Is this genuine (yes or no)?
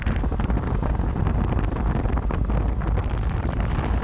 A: yes